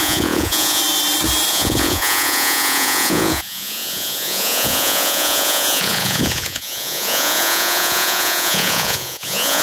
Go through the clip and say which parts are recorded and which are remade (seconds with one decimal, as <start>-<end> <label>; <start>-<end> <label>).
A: 0.0-0.8 remade; 0.8-1.5 recorded; 1.5-9.6 remade